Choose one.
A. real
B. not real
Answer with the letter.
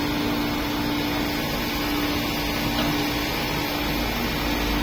A